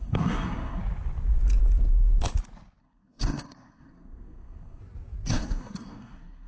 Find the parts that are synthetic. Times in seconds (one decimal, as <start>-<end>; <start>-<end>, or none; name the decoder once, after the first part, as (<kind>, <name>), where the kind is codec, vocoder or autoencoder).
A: 0.0-0.8 (codec, SNAC); 2.8-4.8; 5.3-6.5